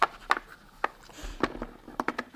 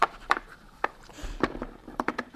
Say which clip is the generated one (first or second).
second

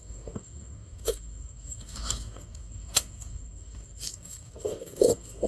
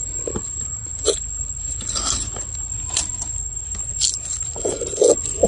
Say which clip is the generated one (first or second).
first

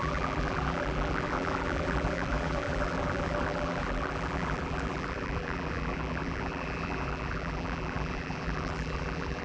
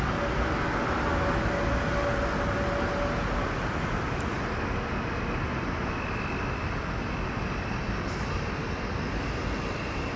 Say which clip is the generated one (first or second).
first